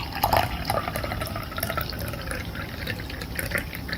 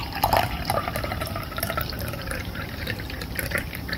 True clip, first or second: first